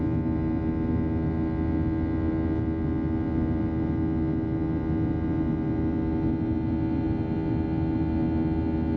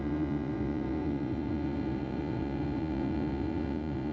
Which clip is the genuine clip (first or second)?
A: first